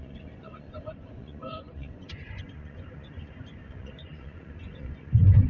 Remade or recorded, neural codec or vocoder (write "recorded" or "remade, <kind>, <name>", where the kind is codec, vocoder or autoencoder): remade, vocoder, Vocos